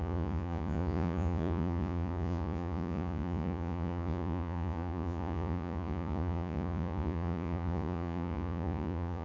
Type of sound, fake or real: fake